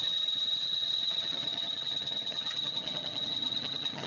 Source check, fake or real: fake